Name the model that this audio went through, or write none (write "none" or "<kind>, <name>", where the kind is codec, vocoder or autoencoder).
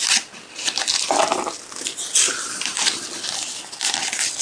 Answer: none